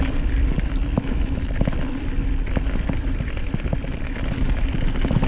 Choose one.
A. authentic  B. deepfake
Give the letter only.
A